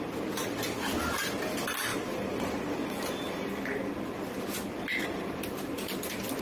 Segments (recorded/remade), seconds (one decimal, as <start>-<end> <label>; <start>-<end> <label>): 0.0-6.4 recorded